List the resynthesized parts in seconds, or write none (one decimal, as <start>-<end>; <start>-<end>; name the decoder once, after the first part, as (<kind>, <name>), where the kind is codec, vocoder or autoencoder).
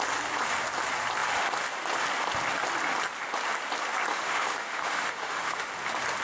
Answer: 4.1-5.7 (autoencoder, DAC-VAE)